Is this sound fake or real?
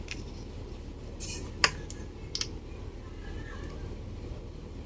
real